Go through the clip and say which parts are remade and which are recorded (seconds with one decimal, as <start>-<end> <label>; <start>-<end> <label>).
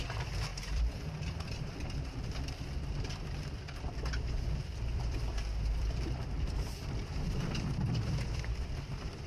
0.0-9.3 remade